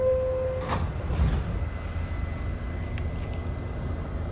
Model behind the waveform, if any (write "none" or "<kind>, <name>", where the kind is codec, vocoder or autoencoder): none